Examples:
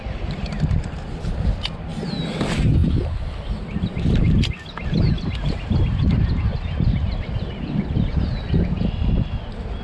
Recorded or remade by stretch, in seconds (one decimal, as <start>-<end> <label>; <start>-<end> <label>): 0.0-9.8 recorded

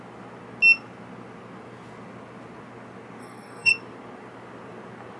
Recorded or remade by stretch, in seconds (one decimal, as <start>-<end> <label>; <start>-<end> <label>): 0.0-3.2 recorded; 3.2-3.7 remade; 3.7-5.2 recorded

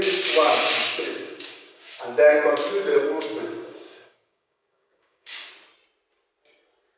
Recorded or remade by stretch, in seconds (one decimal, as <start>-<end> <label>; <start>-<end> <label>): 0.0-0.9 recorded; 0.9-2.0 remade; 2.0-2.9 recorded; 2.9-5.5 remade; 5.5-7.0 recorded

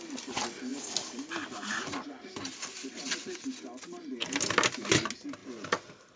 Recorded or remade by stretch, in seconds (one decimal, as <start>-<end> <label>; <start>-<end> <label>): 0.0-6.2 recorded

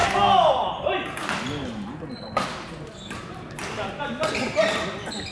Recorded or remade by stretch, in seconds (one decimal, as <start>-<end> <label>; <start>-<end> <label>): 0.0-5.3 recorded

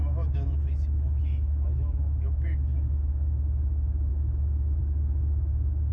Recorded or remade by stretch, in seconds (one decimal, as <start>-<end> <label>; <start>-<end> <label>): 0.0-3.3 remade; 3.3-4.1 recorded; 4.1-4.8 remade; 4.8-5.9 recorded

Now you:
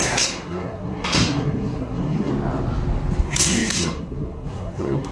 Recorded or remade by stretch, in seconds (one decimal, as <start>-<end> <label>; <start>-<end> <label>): 0.0-2.3 remade; 2.3-3.2 recorded; 3.2-5.1 remade

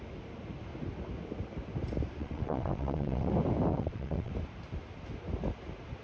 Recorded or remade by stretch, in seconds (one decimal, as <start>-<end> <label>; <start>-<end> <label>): 0.0-2.2 recorded; 2.2-3.3 remade; 3.3-3.7 recorded; 3.7-4.3 remade; 4.3-6.0 recorded